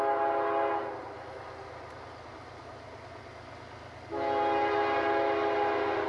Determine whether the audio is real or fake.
real